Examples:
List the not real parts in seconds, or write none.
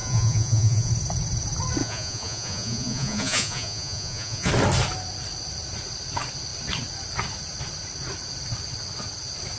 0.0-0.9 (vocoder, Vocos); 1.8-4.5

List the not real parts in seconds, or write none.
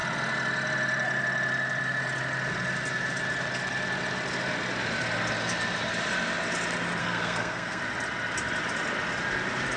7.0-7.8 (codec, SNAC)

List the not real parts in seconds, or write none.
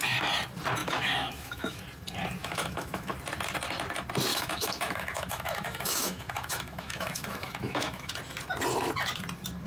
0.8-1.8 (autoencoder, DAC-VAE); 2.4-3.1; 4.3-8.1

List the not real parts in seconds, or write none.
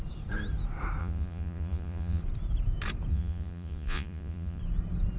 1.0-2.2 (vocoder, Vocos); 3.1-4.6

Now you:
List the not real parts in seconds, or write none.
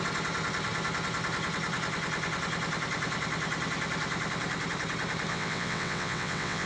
5.3-6.7 (vocoder, WaveNeXt)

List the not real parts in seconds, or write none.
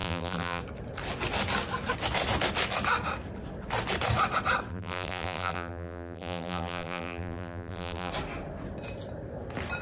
0.0-0.6 (vocoder, BigVGAN v2); 4.7-8.1